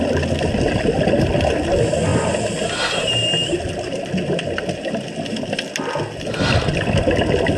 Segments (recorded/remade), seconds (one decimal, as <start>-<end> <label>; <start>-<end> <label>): 0.0-7.6 recorded